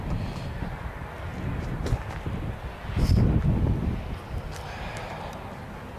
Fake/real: real